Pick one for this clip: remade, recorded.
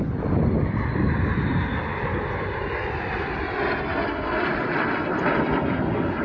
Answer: recorded